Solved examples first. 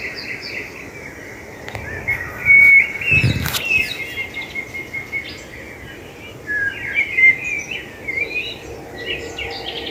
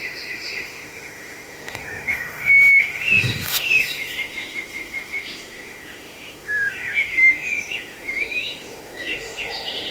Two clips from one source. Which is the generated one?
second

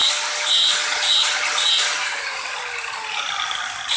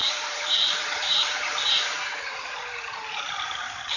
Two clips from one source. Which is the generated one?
second